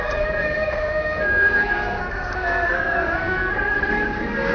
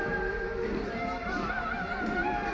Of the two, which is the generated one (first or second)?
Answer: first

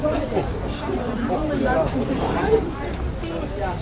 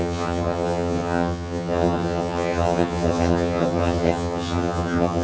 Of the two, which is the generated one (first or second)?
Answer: second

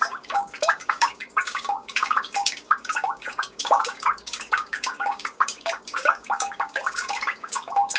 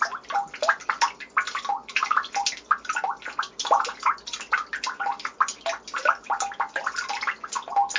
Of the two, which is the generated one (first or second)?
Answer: first